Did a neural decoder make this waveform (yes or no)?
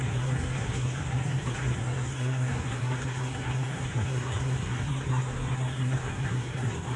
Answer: yes